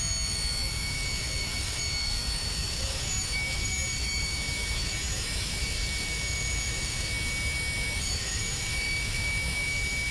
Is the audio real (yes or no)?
no